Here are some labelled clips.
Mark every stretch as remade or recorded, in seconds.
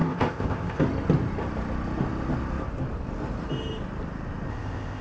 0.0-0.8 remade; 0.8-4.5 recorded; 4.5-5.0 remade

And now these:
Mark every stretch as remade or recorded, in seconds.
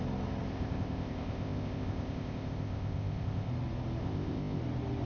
0.0-0.5 recorded; 0.5-3.5 remade; 3.5-4.0 recorded; 4.0-4.6 remade; 4.6-5.0 recorded